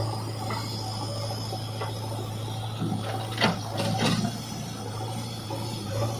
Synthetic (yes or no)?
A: no